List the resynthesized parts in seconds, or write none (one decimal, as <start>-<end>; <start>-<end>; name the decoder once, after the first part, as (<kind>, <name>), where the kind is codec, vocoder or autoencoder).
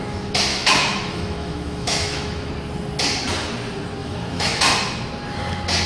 0.5-2.5 (autoencoder, DAC-VAE); 4.0-4.6